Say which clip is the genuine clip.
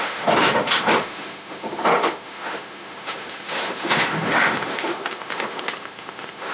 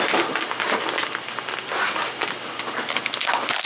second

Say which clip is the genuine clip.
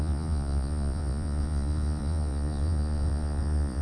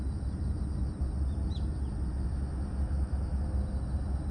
second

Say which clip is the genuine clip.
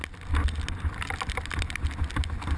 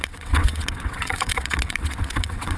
first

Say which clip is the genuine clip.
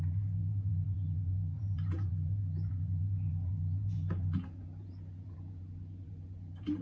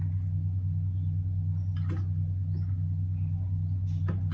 second